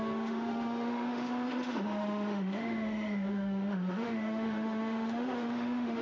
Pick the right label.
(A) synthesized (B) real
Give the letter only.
A